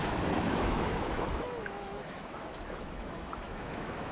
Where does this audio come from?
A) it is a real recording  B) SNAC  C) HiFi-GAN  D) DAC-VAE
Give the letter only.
D